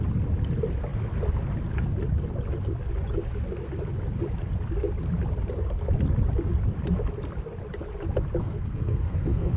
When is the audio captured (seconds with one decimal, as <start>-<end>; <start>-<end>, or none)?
0.0-8.4